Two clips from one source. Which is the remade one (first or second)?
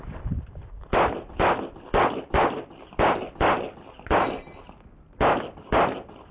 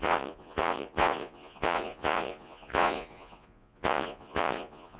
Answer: second